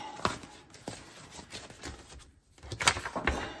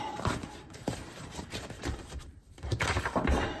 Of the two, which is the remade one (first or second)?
second